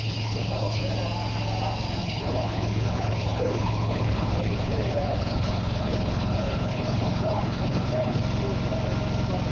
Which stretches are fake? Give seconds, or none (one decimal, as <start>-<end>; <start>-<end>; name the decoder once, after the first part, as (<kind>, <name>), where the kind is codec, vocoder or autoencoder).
0.0-0.8 (codec, HILCodec); 2.0-8.2